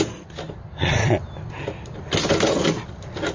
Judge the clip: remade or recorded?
recorded